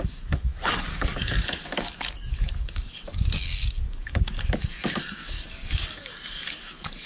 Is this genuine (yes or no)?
no